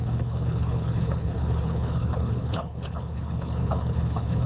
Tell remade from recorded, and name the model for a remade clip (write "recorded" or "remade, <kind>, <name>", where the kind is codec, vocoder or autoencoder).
remade, codec, HILCodec